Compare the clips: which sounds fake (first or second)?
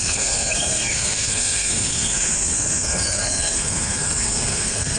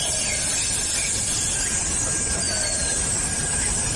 first